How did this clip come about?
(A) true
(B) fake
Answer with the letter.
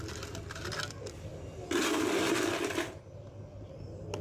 A